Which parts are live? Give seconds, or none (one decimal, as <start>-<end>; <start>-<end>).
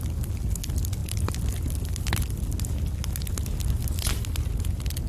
0.0-5.1